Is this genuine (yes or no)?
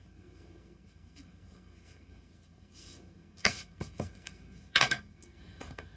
no